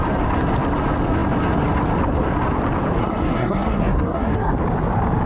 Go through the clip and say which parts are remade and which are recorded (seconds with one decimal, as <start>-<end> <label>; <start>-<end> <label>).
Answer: 0.0-3.0 recorded; 3.0-4.5 remade; 4.5-5.3 recorded